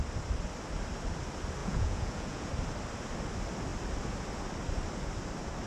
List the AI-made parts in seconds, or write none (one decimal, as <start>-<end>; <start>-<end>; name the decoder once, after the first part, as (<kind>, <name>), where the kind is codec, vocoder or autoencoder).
1.6-2.5 (vocoder, Vocos)